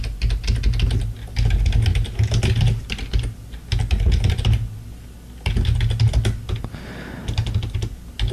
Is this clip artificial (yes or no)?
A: no